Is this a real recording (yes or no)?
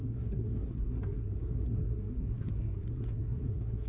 no